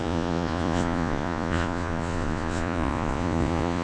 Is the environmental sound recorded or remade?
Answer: remade